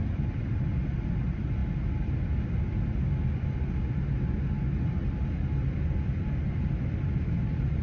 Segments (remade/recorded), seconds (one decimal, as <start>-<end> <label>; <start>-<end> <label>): 0.0-7.8 recorded